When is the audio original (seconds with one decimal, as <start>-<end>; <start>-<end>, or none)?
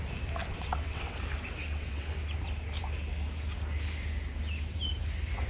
0.0-0.5; 1.2-1.6; 2.1-5.5